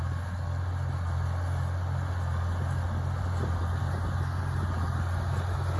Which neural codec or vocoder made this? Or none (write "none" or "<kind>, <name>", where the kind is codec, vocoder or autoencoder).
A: none